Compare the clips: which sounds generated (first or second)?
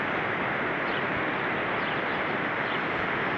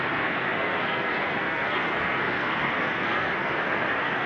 second